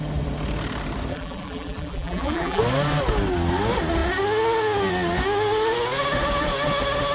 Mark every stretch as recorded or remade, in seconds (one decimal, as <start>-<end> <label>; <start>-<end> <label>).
0.0-1.1 recorded; 1.1-2.6 remade; 2.6-7.1 recorded